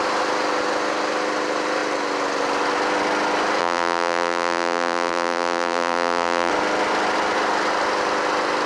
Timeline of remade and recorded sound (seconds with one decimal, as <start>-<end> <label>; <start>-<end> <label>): 0.0-3.6 recorded; 3.6-6.5 remade; 6.5-8.7 recorded